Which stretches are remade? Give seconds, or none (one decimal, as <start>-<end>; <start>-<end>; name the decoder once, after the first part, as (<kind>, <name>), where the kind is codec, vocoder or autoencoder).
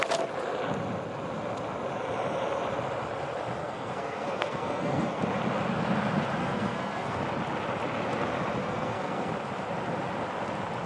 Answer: 3.6-5.2 (codec, SNAC); 6.4-7.2; 8.6-9.3